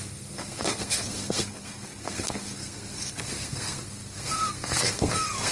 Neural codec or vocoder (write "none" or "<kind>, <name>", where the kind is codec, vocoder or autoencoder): codec, SNAC